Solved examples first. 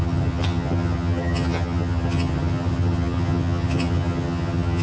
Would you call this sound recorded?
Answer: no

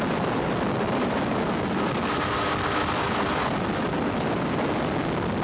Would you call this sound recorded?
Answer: yes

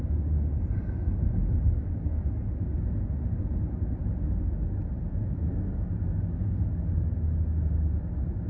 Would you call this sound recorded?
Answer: yes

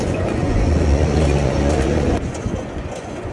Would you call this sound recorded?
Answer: no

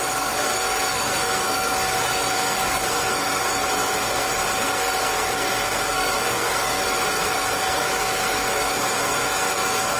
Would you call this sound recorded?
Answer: no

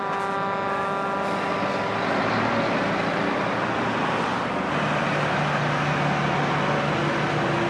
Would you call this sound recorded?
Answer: yes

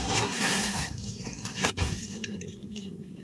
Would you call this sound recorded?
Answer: no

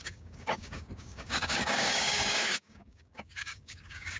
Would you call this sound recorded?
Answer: no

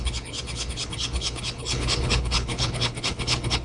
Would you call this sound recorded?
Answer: no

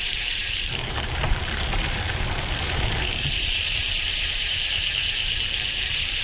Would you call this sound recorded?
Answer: no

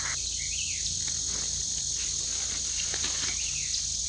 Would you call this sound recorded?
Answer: yes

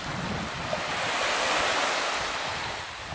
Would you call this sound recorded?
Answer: yes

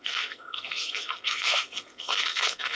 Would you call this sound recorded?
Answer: no